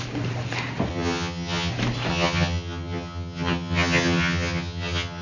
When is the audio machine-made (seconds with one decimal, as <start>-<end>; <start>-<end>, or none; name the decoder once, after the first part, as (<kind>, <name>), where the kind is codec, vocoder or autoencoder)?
0.9-1.7 (vocoder, HiFi-GAN); 2.1-5.2